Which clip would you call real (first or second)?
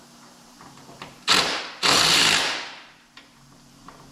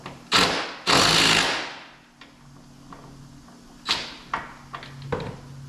second